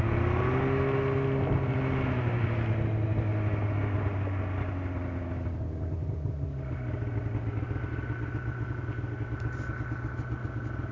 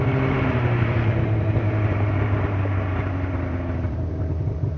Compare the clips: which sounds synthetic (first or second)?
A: second